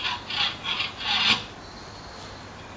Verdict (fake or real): real